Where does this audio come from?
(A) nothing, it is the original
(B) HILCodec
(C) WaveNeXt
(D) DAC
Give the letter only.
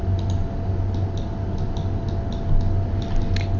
A